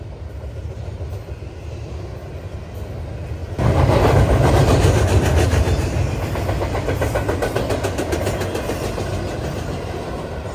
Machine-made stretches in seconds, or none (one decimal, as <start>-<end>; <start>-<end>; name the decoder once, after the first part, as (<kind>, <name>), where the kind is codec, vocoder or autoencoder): none